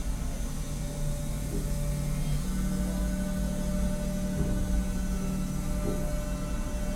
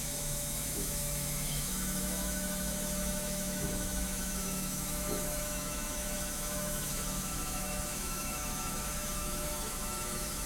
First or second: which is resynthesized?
second